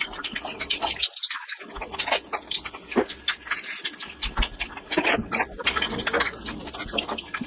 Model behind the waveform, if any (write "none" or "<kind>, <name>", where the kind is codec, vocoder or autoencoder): none